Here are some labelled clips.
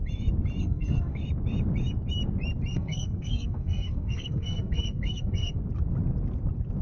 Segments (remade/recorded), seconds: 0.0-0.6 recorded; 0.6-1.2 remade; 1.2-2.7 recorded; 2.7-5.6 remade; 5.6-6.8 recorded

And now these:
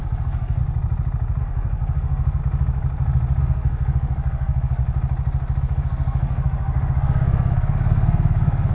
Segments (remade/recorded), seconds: 0.0-0.6 remade; 0.6-1.4 recorded; 1.4-2.4 remade; 2.4-3.4 recorded; 3.4-4.8 remade; 4.8-5.6 recorded; 5.6-8.7 remade

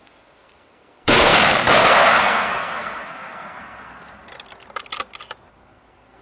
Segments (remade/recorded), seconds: 0.0-4.3 remade; 4.3-5.5 recorded; 5.5-6.2 remade

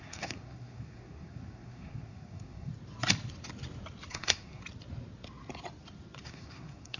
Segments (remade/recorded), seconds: 0.0-2.7 remade; 2.7-4.1 recorded; 4.1-4.6 remade; 4.6-6.2 recorded; 6.2-7.0 remade

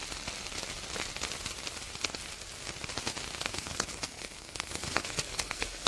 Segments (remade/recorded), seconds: 0.0-3.5 recorded; 3.5-5.9 remade

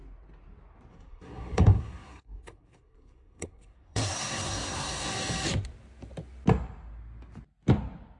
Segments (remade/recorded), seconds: 0.0-0.9 recorded; 0.9-5.1 remade; 5.1-8.2 recorded

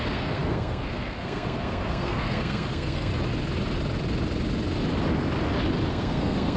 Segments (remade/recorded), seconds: 0.0-3.1 remade; 3.1-5.9 recorded; 5.9-6.6 remade

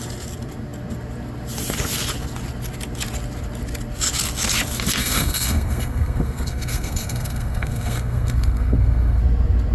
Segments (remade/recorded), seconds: 0.0-5.0 recorded; 5.0-9.2 remade; 9.2-9.7 recorded